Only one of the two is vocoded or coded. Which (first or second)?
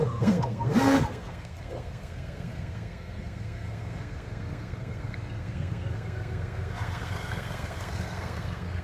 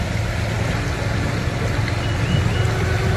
first